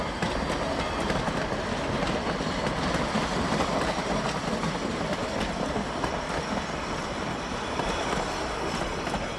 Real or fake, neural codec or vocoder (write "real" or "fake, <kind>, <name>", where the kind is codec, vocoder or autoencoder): real